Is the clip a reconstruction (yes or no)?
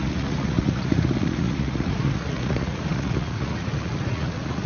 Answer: yes